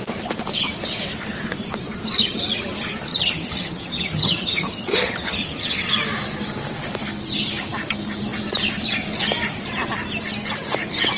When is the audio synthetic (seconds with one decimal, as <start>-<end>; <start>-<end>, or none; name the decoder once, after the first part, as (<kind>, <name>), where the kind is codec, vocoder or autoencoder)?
3.1-5.9 (vocoder, HiFi-GAN)